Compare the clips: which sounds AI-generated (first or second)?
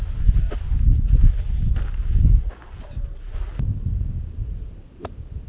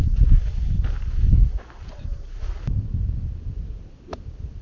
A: second